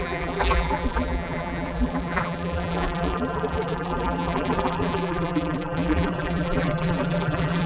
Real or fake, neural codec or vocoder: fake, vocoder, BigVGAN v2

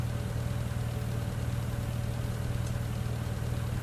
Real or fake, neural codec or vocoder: real